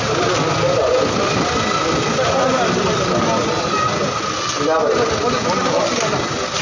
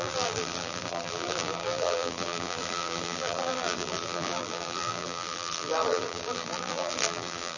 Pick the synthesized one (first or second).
second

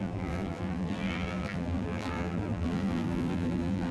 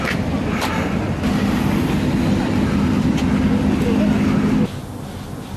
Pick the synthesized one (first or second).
first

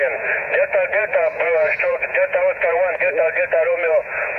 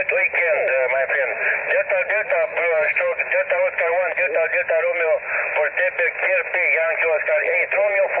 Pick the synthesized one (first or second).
first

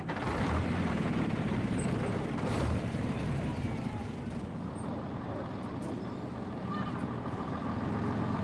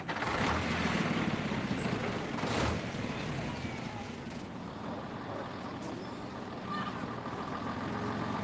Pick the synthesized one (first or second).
first